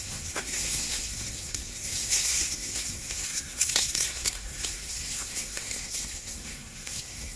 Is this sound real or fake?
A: fake